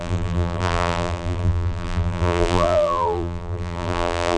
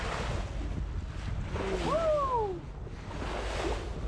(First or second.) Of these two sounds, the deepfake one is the first